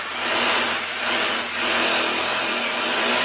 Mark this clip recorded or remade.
recorded